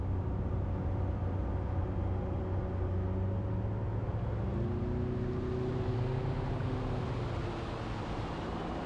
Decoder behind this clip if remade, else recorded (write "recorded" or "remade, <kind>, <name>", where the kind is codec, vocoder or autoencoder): recorded